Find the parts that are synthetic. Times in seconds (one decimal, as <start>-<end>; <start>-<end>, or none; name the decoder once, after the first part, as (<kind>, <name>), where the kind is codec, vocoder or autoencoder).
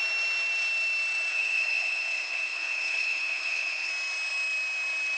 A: 1.3-3.9 (codec, HILCodec)